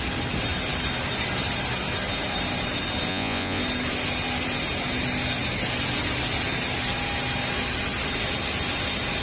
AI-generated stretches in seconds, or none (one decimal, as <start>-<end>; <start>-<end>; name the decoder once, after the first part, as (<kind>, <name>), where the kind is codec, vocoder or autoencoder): 3.1-3.6 (vocoder, Vocos)